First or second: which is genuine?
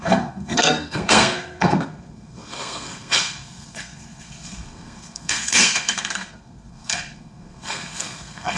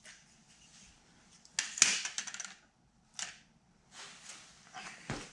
second